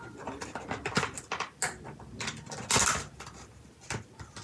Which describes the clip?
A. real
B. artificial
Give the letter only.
A